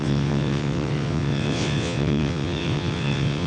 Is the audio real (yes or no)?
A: no